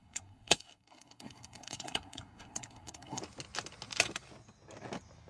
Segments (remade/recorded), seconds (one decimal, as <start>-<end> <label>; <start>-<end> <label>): 0.0-3.2 remade; 3.2-5.3 recorded

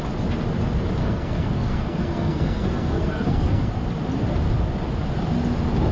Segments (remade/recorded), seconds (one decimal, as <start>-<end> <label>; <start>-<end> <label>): 0.0-1.0 recorded; 1.0-3.7 remade; 3.7-5.9 recorded

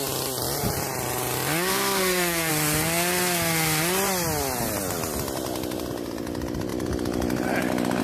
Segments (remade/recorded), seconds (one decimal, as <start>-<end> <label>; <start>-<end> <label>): 0.0-1.7 recorded; 1.7-2.5 remade; 2.5-8.0 recorded

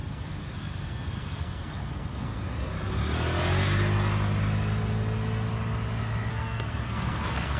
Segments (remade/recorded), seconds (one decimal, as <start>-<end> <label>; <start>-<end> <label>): 0.0-2.7 remade; 2.7-6.3 recorded; 6.3-7.6 remade

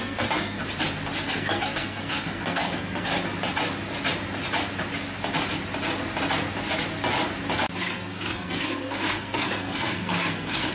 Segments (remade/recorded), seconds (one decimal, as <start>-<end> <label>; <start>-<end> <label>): 0.0-0.6 remade; 0.6-1.3 recorded; 1.3-3.1 remade; 3.1-7.8 recorded; 7.8-10.7 remade